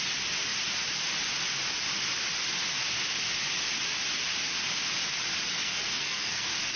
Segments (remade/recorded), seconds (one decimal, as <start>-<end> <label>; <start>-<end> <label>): 0.0-5.5 recorded; 5.5-6.8 remade